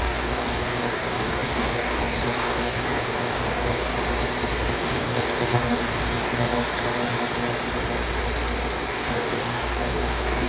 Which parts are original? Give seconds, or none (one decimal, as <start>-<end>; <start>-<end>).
3.9-4.7; 6.5-8.9